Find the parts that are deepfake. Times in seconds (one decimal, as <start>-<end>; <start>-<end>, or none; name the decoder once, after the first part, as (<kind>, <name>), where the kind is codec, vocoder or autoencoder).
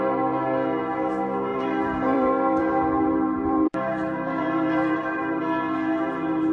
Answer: 1.5-5.4 (vocoder, BigVGAN v2)